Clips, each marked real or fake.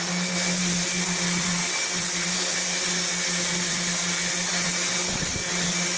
real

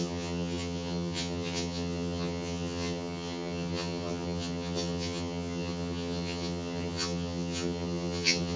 fake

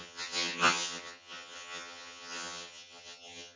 fake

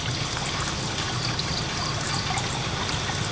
real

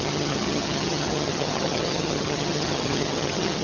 fake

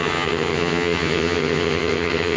fake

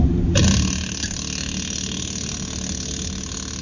real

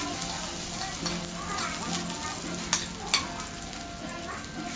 real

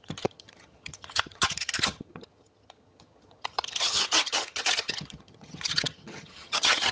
fake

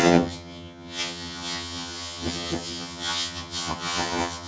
fake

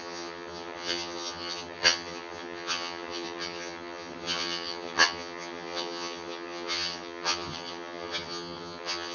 fake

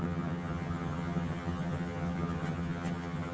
fake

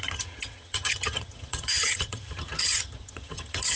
fake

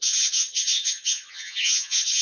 fake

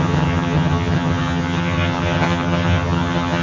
fake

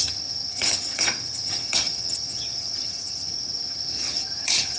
fake